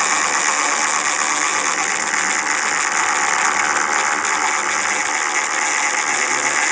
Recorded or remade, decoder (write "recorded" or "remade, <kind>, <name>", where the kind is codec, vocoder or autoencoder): recorded